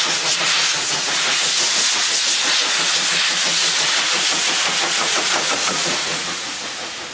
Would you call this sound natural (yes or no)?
no